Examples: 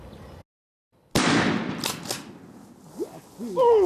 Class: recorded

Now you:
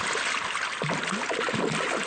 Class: recorded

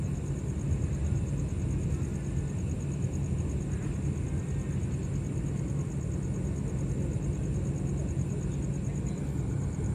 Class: recorded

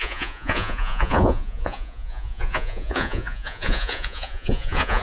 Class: remade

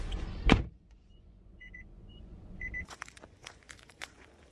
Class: remade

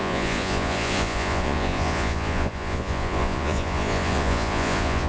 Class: remade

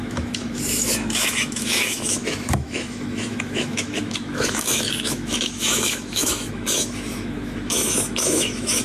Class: remade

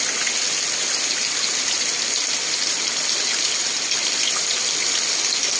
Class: recorded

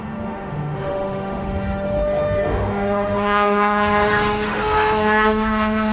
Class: remade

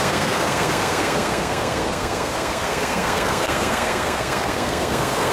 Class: remade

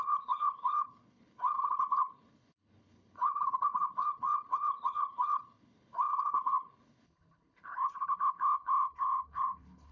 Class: remade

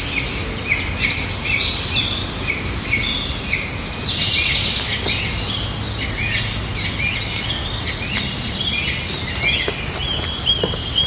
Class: recorded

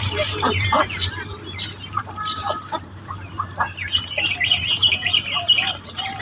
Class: remade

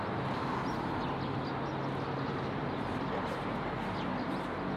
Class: recorded